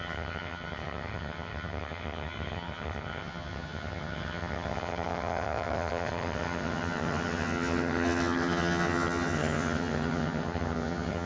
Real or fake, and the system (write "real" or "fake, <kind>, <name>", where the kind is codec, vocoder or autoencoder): fake, vocoder, HiFi-GAN